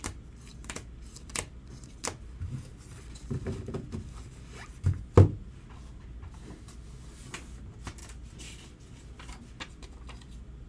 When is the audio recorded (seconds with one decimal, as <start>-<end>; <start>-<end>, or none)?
0.0-10.7